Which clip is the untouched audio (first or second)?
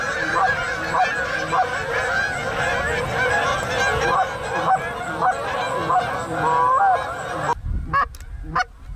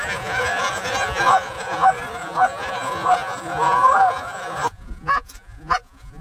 first